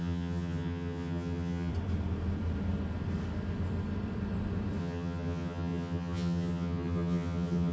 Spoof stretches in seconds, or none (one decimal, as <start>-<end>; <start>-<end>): 0.0-1.7; 4.8-7.7